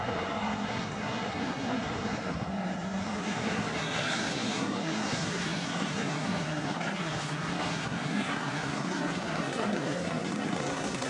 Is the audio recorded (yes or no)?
no